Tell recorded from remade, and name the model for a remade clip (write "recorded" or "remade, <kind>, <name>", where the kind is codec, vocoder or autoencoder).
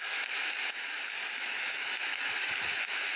remade, autoencoder, DAC-VAE